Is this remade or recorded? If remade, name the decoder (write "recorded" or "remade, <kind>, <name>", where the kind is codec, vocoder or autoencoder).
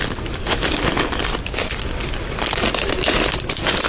remade, vocoder, BigVGAN v2